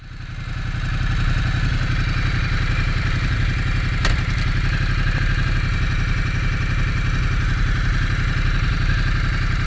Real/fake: real